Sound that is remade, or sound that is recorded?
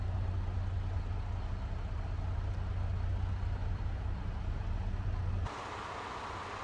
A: recorded